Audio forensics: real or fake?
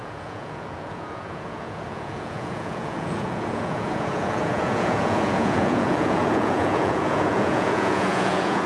fake